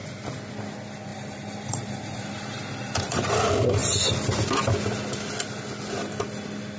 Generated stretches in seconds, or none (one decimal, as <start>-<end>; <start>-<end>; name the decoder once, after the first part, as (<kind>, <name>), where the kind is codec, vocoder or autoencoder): 1.1-3.4 (vocoder, BigVGAN v2)